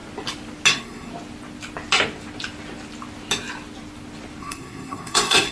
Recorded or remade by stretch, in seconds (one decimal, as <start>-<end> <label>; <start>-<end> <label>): 0.0-0.7 recorded; 0.7-1.1 remade; 1.1-4.4 recorded; 4.4-5.5 remade